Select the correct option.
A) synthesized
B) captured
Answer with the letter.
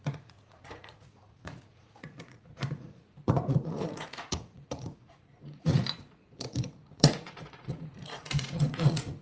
A